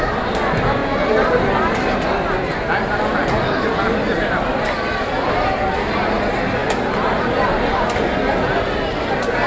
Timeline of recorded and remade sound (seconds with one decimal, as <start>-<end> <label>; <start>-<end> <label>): 0.0-9.5 recorded